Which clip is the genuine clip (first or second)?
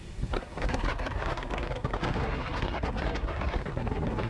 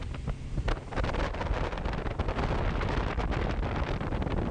second